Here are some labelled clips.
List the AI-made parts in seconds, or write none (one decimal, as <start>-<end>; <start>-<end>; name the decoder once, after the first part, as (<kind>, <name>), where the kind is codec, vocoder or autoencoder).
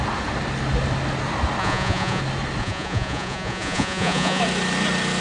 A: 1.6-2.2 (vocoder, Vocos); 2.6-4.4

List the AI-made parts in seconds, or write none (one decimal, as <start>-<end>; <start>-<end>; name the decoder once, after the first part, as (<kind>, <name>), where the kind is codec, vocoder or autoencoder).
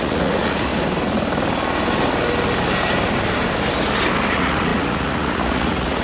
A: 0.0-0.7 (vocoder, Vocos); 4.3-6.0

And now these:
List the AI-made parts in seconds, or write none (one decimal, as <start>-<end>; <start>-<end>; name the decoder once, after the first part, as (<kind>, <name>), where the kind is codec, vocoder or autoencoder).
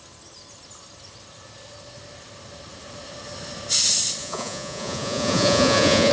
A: 4.2-6.1 (vocoder, Vocos)